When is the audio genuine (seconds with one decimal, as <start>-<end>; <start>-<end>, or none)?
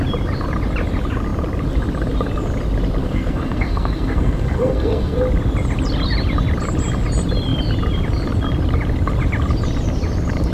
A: 0.0-3.0; 5.2-10.5